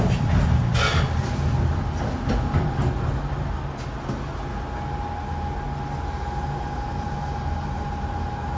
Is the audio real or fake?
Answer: real